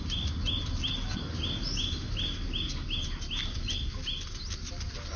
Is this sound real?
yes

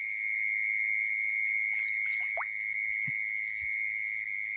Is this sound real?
yes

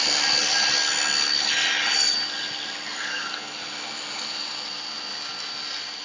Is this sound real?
yes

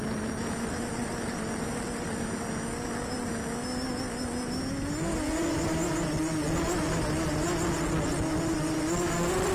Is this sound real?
yes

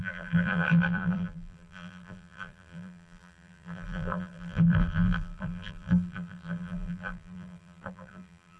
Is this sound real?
no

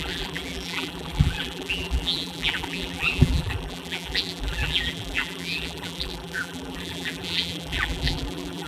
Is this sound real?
no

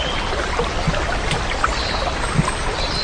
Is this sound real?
yes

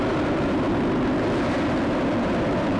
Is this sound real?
no